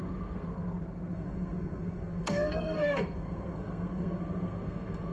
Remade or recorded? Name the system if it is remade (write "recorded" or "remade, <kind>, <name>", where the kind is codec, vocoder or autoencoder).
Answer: remade, codec, SNAC